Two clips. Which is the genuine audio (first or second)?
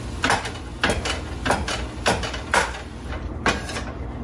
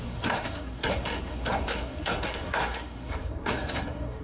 first